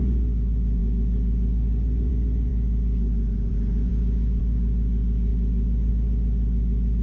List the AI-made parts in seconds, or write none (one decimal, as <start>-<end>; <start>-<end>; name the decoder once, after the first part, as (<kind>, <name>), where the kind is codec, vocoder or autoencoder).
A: 3.9-4.4 (autoencoder, DAC-VAE)